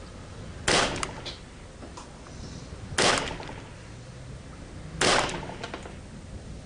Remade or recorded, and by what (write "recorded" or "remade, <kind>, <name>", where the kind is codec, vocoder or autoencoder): recorded